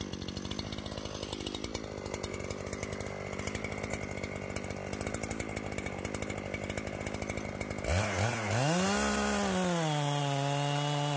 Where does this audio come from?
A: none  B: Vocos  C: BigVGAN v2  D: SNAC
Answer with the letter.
A